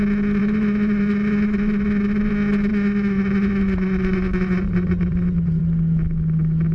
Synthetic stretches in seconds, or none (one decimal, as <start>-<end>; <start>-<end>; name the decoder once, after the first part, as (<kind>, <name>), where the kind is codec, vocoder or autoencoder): 0.4-2.3 (vocoder, Vocos); 2.7-5.6